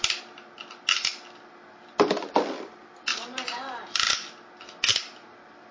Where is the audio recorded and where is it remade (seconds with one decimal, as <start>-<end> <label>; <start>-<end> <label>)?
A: 0.0-3.1 recorded; 3.1-4.1 remade; 4.1-5.7 recorded